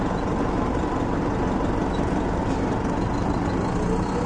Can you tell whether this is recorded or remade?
recorded